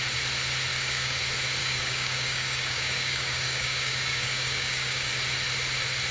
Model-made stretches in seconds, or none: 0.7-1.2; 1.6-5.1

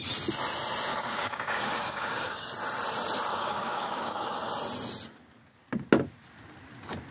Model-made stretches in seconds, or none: 0.9-2.5; 3.3-4.5

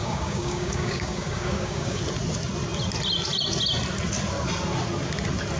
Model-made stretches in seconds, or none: 0.0-2.0